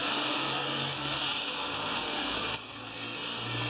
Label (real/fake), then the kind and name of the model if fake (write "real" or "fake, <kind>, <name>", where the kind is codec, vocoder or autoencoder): fake, codec, SNAC